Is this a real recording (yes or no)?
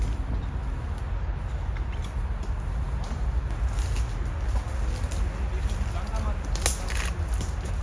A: yes